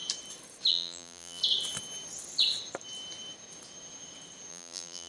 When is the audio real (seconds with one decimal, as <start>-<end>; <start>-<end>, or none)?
0.0-0.7; 1.4-4.5